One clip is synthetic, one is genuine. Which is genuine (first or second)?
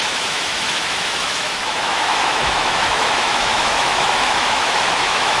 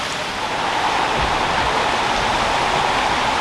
second